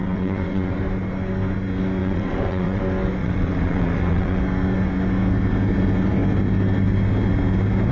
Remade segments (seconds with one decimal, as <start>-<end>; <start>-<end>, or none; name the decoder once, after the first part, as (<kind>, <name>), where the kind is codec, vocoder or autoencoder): 0.0-0.8 (vocoder, WaveNeXt); 2.0-2.8; 3.2-4.4